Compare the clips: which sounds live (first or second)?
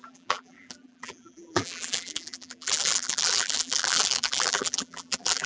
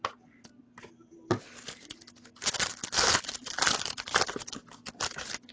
second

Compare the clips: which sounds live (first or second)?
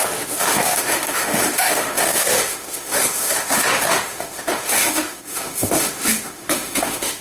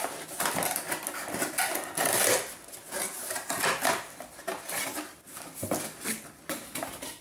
second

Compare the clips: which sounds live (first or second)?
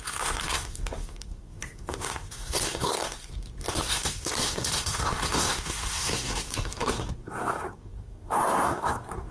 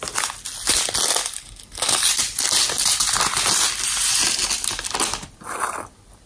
second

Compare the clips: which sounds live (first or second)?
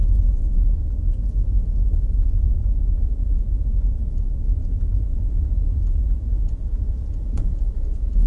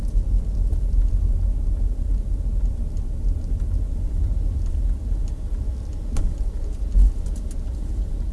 second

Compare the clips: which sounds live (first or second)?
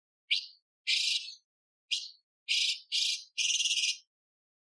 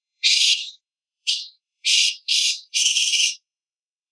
first